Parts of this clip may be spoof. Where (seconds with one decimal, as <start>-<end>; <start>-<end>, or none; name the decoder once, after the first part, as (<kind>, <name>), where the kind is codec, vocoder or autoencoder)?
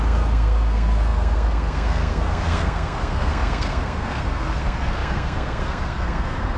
0.0-6.6 (codec, SNAC)